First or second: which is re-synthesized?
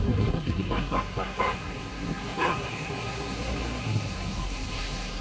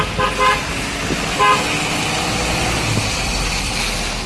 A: first